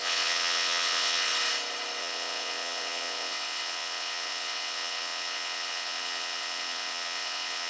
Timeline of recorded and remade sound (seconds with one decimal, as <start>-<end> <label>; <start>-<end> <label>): 0.0-1.3 remade; 1.3-2.0 recorded; 2.0-7.7 remade